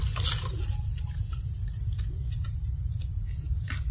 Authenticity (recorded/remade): recorded